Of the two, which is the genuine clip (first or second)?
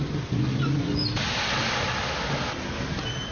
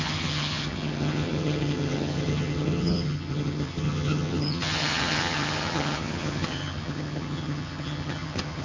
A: first